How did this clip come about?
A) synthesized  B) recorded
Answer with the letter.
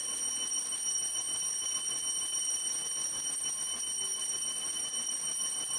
B